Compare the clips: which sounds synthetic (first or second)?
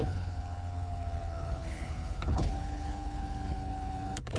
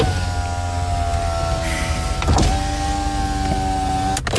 first